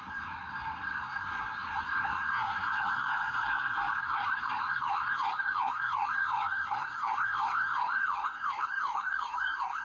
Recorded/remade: remade